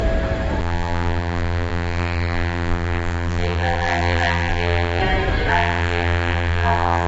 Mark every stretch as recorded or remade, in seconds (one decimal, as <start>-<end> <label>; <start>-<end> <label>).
0.0-0.6 recorded; 0.6-5.0 remade; 5.0-5.5 recorded; 5.5-7.1 remade